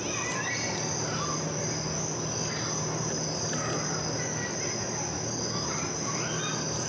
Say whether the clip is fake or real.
real